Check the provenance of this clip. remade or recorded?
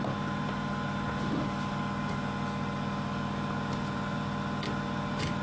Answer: recorded